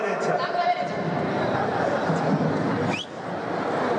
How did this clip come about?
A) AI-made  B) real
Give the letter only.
B